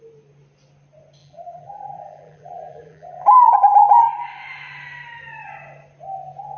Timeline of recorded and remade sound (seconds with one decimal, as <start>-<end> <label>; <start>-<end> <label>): 0.0-1.2 recorded; 1.2-4.0 remade; 4.0-6.6 recorded